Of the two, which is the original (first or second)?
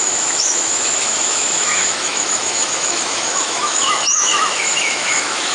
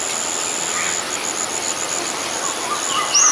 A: second